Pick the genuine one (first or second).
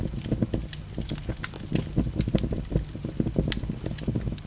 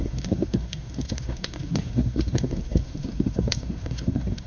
first